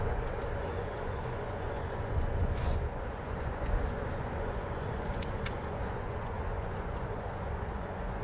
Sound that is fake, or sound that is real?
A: fake